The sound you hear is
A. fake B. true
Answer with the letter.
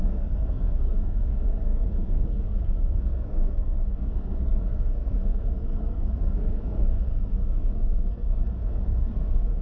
A